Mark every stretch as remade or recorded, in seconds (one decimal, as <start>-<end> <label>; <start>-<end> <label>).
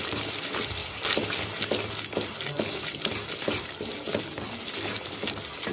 0.0-5.7 recorded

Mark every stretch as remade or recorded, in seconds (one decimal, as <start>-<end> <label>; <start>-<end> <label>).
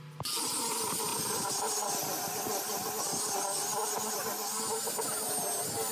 0.0-5.9 recorded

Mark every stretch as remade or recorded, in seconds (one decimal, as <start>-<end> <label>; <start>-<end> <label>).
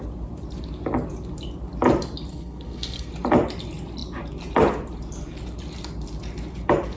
0.0-2.3 recorded; 2.3-3.1 remade; 3.1-7.0 recorded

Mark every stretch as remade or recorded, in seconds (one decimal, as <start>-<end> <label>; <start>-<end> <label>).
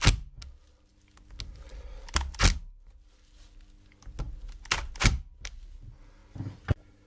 0.0-7.1 recorded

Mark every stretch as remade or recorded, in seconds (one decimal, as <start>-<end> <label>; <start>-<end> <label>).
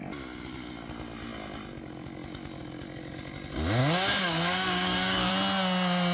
0.0-3.8 recorded; 3.8-5.3 remade; 5.3-6.1 recorded